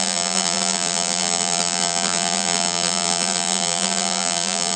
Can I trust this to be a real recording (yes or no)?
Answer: no